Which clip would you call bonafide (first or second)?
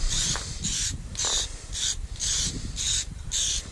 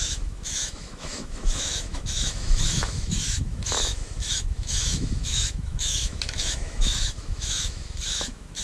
first